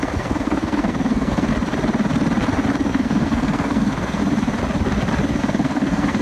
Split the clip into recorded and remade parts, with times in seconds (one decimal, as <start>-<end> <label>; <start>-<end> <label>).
0.0-1.5 remade; 1.5-2.9 recorded; 2.9-4.2 remade; 4.2-5.4 recorded; 5.4-6.2 remade